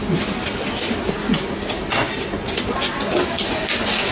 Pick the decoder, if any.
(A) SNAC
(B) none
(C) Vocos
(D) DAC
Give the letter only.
B